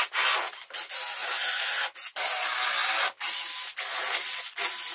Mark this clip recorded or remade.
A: recorded